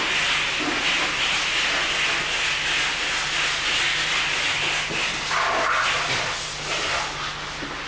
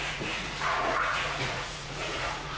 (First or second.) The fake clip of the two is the second